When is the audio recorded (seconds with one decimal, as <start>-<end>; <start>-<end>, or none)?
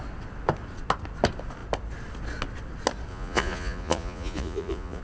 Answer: 0.0-3.1